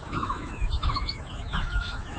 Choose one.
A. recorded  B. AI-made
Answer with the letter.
B